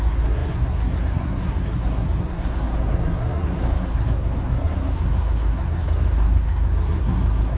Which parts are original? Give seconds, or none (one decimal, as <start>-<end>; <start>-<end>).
none